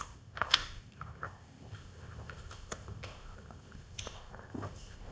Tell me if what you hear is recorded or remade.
remade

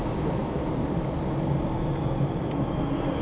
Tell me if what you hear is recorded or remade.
recorded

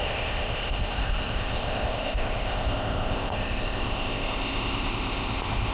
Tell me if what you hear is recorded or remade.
remade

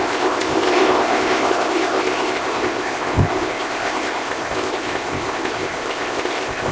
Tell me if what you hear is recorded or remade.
remade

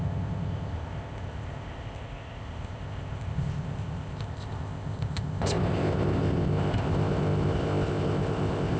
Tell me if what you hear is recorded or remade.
remade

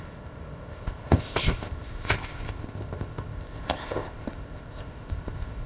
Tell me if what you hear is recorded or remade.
remade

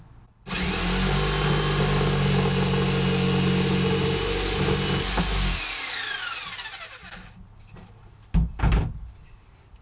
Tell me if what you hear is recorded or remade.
recorded